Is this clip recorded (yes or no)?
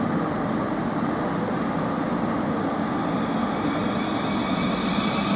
yes